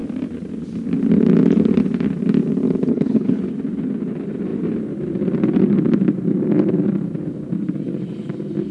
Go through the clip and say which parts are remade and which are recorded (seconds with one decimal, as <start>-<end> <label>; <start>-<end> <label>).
0.0-2.9 recorded; 2.9-3.4 remade; 3.4-8.7 recorded